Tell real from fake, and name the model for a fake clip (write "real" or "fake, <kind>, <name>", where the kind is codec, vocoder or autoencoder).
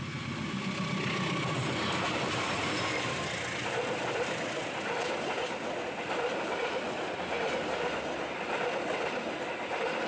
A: real